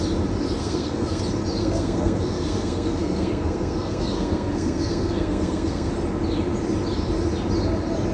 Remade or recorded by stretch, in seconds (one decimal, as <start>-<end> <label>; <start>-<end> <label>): 0.0-0.6 recorded; 0.6-1.2 remade; 1.2-1.6 recorded; 1.6-5.9 remade; 5.9-8.1 recorded